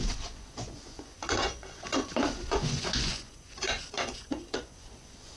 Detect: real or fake fake